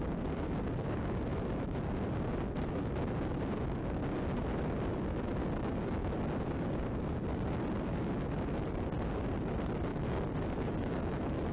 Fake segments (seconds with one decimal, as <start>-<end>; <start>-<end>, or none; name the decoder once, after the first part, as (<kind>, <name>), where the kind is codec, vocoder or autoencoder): 5.4-6.1 (autoencoder, DAC-VAE); 9.9-11.5